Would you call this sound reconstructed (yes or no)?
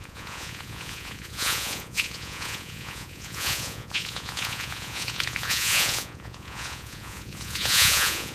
yes